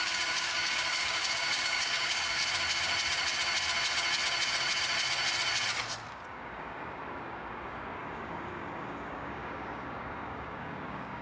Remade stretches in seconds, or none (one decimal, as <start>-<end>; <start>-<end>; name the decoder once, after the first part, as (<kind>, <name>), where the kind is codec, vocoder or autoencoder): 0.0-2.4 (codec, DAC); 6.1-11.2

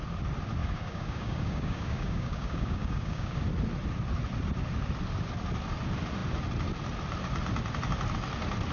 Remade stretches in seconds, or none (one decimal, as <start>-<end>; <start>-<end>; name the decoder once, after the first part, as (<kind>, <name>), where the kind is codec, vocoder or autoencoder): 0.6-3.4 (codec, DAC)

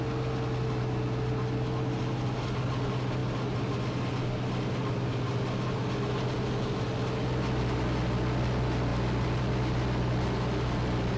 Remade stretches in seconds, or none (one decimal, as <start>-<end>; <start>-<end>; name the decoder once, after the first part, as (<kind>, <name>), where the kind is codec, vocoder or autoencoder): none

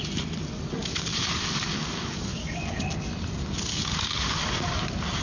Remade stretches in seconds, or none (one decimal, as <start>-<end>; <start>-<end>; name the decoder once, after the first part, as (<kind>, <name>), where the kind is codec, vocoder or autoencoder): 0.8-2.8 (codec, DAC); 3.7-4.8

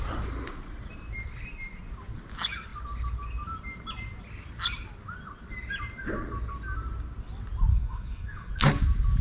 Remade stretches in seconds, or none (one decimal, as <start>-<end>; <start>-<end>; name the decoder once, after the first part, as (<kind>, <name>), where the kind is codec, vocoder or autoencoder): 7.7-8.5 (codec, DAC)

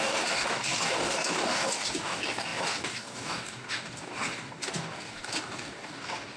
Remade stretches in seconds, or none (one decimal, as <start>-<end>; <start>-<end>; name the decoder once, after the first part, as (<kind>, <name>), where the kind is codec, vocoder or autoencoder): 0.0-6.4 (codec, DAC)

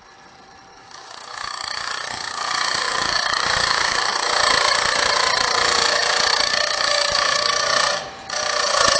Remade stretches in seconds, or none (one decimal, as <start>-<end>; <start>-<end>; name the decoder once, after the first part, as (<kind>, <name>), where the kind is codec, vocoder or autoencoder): 0.7-4.1 (codec, DAC); 6.3-7.5

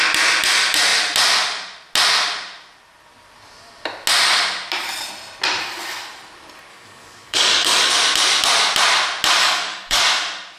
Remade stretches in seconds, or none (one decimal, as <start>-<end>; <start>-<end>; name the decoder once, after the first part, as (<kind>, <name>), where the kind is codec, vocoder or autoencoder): 6.7-7.9 (codec, DAC); 9.4-10.0